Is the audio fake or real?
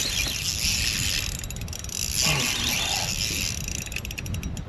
real